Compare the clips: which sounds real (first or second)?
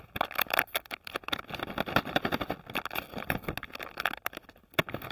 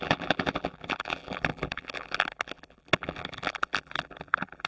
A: first